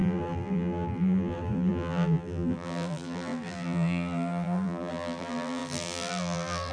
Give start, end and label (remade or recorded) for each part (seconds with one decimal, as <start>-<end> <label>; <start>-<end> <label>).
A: 0.0-6.7 remade